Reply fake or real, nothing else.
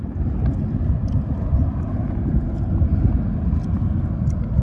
real